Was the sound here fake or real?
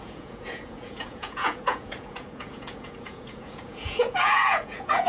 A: fake